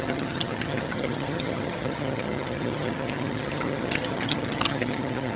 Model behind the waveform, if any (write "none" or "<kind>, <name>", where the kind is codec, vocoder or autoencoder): vocoder, HiFi-GAN